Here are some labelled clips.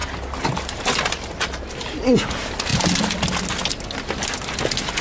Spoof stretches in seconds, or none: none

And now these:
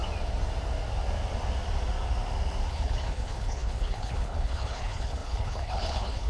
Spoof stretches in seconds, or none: 2.7-6.3 (codec, HILCodec)

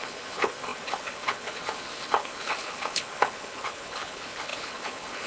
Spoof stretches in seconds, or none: 0.0-5.3 (codec, HILCodec)

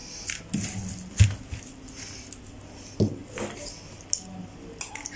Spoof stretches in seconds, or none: none

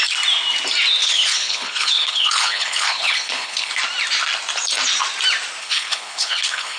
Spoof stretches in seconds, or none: 1.0-3.8 (codec, HILCodec); 5.6-6.8